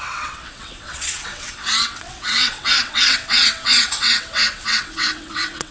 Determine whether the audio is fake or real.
fake